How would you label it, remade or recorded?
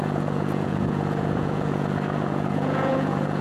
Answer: remade